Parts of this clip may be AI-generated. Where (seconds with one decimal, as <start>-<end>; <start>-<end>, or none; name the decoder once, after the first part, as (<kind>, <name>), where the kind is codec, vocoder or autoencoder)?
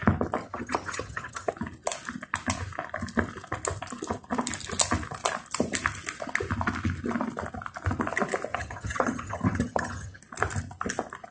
0.4-1.5 (vocoder, HiFi-GAN); 8.5-10.2